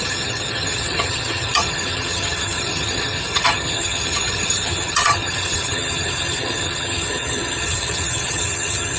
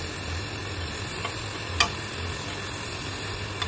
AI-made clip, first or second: first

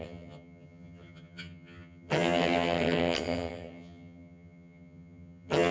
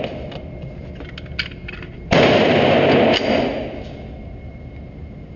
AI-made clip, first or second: first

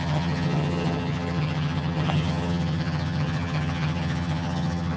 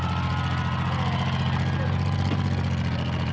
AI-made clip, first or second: first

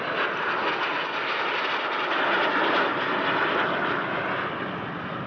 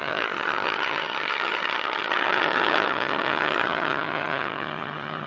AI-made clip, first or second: second